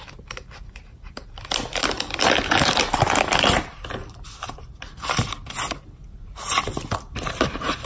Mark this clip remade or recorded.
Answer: recorded